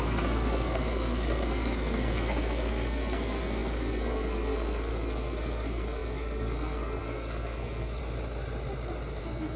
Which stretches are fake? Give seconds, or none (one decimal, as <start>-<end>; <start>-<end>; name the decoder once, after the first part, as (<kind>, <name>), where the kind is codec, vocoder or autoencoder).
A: 0.0-8.0 (codec, SNAC); 9.2-9.6